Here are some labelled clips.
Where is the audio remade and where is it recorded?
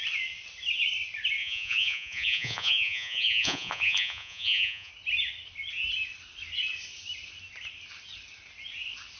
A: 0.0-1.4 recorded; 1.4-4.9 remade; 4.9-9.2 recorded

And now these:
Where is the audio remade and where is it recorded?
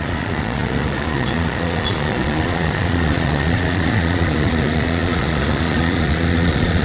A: 0.0-6.8 remade